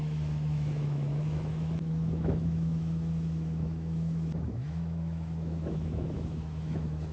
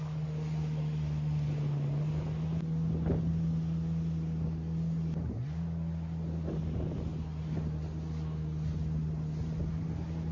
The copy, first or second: first